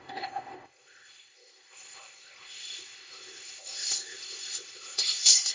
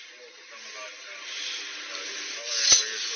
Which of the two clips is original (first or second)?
second